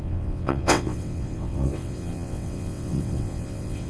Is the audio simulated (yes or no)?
yes